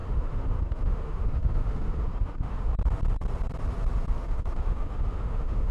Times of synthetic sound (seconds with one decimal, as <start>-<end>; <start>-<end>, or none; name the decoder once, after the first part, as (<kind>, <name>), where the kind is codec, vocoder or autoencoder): 0.0-2.7 (autoencoder, DAC-VAE); 4.1-5.7